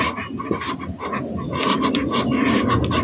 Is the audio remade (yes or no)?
no